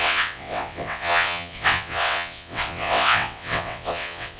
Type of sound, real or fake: fake